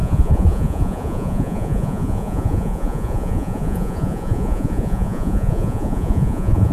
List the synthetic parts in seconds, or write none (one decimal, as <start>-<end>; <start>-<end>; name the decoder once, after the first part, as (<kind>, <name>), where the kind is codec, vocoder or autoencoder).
0.0-6.7 (vocoder, Vocos)